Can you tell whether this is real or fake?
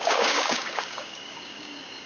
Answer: fake